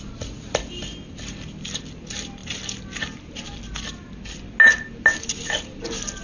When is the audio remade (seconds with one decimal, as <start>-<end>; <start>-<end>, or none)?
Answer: none